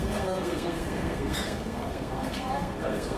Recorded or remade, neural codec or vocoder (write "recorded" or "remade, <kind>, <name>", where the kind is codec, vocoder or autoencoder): remade, codec, SNAC